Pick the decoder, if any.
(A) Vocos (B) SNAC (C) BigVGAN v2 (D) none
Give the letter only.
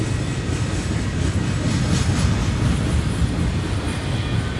D